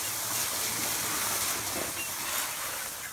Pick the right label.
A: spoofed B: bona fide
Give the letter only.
B